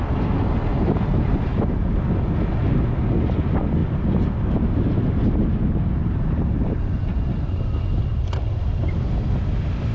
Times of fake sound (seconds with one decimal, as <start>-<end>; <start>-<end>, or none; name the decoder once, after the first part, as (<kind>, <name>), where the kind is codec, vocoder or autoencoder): 0.7-2.0 (vocoder, BigVGAN v2); 6.0-7.8